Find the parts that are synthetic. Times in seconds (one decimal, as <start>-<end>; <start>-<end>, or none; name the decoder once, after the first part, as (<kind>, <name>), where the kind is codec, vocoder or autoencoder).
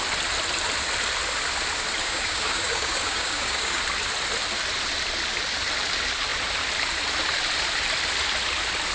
2.0-3.8 (codec, DAC)